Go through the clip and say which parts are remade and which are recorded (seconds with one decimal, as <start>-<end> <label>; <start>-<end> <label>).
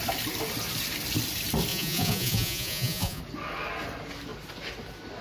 0.0-1.7 recorded; 1.7-3.2 remade; 3.2-5.2 recorded